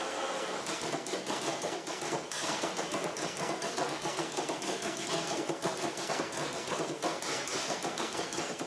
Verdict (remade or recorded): remade